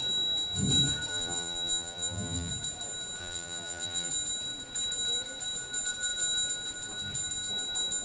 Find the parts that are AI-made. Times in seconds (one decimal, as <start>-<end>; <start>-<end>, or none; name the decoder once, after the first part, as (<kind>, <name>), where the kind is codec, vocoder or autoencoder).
1.1-2.5 (vocoder, BigVGAN v2); 3.2-4.1

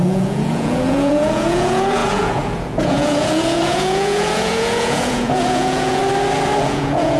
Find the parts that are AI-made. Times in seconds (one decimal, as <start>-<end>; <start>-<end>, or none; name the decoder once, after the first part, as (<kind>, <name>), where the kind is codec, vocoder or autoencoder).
0.0-6.0 (vocoder, Vocos); 6.6-7.2

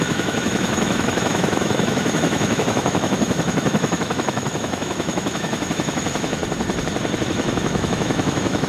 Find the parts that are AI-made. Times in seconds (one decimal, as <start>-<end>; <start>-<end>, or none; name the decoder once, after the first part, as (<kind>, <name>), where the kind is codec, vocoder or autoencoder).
0.0-6.4 (autoencoder, DAC-VAE); 7.2-8.7